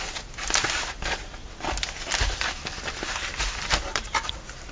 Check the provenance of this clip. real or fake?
fake